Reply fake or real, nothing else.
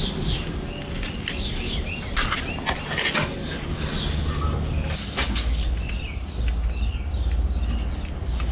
real